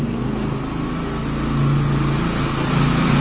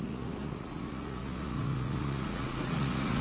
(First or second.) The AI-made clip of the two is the second